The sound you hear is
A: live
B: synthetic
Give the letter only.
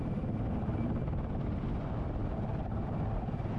A